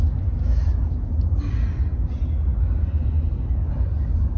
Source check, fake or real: real